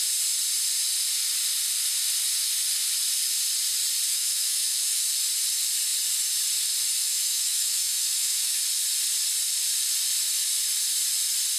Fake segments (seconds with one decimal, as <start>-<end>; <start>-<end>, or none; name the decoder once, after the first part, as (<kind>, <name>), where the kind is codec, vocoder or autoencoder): 4.1-5.1 (autoencoder, DAC-VAE); 7.1-8.6

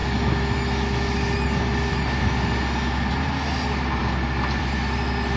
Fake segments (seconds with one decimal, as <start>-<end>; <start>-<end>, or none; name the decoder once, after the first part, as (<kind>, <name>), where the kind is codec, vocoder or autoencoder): none

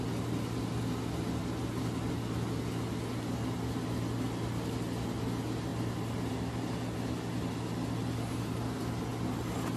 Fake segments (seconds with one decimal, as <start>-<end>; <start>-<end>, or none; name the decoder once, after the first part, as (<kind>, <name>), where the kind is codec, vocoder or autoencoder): none

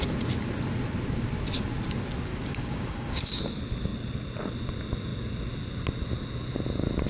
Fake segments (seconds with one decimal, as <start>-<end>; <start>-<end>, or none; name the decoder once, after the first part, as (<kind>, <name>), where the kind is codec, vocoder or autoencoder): 2.3-3.4 (codec, DAC)

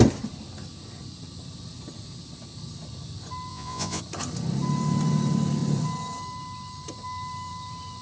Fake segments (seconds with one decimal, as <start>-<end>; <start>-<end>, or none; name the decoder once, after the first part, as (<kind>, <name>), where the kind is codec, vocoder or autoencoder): 3.5-4.0 (vocoder, Vocos)

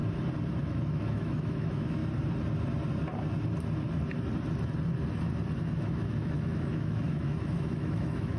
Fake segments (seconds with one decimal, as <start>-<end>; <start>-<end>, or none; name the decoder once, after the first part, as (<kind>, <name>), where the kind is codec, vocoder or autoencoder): 0.6-2.0 (autoencoder, DAC-VAE); 5.6-8.4

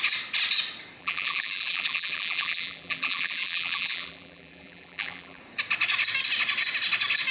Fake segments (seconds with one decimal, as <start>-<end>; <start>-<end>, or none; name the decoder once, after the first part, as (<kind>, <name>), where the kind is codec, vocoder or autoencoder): 1.0-5.4 (vocoder, BigVGAN v2)